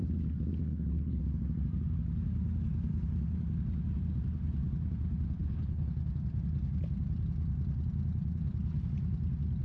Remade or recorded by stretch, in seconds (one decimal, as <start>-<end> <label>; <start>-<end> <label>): 0.0-0.6 recorded; 0.6-1.2 remade; 1.2-5.4 recorded; 5.4-5.9 remade; 5.9-9.6 recorded